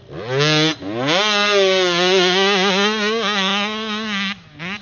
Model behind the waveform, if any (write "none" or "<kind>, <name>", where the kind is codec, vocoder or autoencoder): none